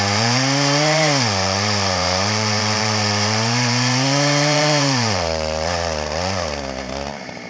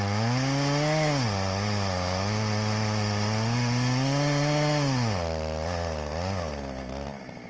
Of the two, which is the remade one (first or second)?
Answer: first